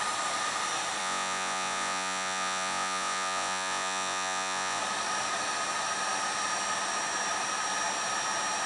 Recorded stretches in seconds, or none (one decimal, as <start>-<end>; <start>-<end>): 0.0-1.0; 4.8-8.7